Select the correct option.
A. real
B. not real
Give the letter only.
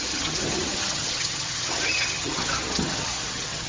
B